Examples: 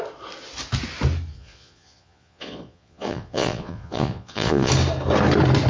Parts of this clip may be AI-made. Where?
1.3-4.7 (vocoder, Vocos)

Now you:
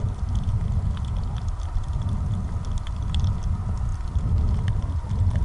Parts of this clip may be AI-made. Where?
none